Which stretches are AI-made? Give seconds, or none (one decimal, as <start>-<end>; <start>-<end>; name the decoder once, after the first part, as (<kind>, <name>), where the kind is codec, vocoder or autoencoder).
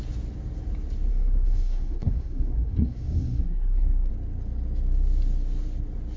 1.1-4.1 (codec, SNAC)